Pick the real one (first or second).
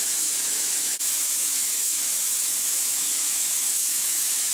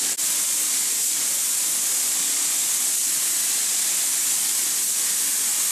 second